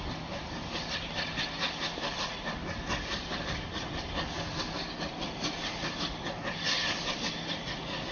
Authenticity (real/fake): real